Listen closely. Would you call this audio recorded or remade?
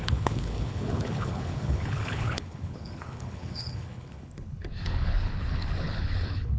remade